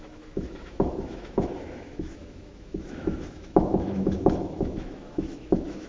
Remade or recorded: remade